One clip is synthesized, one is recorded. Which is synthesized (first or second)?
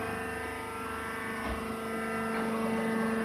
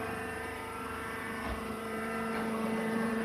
second